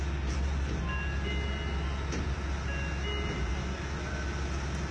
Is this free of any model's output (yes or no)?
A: yes